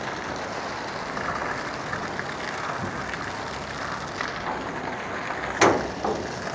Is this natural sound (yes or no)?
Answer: yes